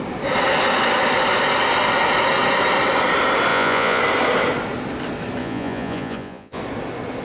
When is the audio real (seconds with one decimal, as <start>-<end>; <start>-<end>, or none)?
0.0-3.5; 4.0-5.4; 6.6-7.2